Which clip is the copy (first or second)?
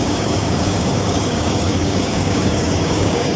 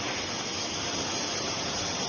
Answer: first